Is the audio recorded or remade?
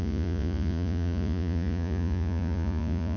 remade